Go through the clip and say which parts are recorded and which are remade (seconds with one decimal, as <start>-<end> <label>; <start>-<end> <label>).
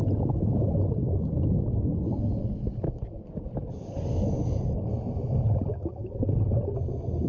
0.0-1.0 recorded; 1.0-1.9 remade; 1.9-7.3 recorded